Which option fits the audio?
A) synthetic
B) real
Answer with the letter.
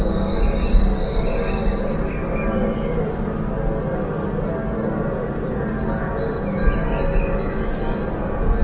B